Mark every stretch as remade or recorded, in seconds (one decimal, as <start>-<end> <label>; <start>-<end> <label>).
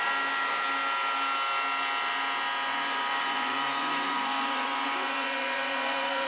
0.0-2.7 recorded; 2.7-6.3 remade